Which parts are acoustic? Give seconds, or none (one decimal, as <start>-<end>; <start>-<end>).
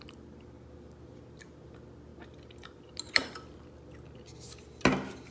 0.0-5.3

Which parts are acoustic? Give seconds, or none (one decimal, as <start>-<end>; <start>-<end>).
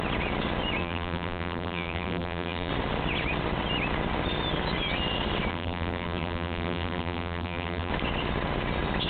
0.0-0.8; 2.7-5.5; 7.9-9.1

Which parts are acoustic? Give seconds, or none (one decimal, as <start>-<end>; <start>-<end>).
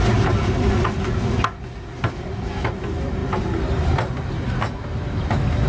0.0-5.7